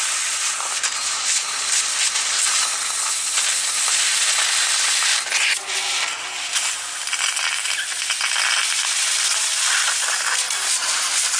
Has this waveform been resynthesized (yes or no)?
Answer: no